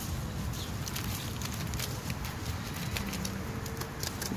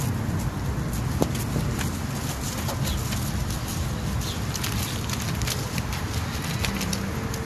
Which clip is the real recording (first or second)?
second